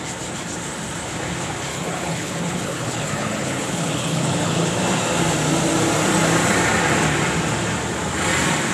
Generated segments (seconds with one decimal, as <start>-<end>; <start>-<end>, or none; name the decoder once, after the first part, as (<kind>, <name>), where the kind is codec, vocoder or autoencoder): 1.7-4.7 (codec, HILCodec)